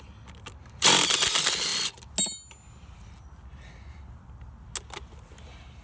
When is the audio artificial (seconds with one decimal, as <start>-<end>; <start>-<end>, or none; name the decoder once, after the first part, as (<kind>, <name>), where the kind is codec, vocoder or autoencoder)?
none